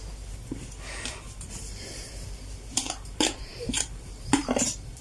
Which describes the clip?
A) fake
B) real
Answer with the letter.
A